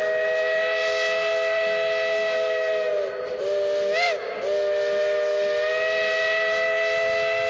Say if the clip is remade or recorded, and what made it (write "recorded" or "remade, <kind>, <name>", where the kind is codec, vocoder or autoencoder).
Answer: recorded